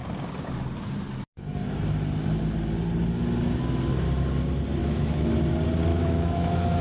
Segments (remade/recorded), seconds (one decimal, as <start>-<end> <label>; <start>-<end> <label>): 0.0-4.8 recorded; 4.8-5.3 remade; 5.3-5.9 recorded; 5.9-6.8 remade